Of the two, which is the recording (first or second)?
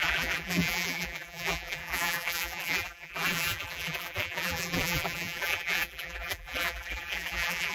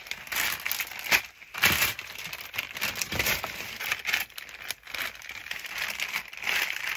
second